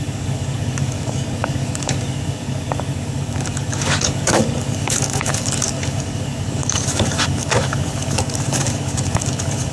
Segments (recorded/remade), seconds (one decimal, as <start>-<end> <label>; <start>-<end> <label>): 0.0-9.7 remade